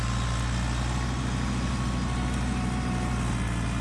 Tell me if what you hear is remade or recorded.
recorded